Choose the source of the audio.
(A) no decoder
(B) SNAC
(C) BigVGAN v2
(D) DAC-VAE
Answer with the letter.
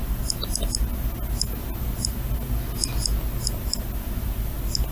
A